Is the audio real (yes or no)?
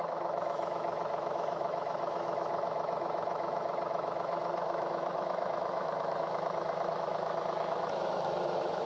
no